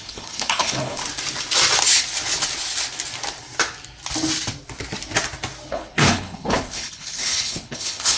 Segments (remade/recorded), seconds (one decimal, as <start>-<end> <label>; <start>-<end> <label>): 0.0-1.0 remade; 1.0-5.7 recorded; 5.7-8.2 remade